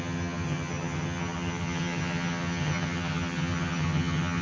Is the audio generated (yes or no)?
yes